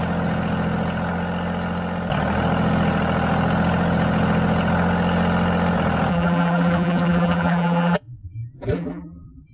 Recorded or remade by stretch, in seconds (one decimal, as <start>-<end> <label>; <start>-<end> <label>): 0.0-6.1 recorded; 6.1-9.5 remade